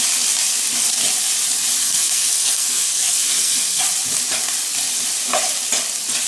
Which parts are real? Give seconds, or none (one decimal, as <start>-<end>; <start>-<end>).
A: 0.0-1.8; 3.8-6.3